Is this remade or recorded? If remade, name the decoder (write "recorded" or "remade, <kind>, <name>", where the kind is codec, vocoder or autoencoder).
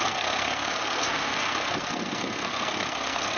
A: remade, codec, SNAC